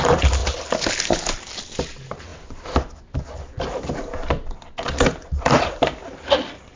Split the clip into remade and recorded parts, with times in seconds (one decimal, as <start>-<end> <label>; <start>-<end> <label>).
0.0-6.8 recorded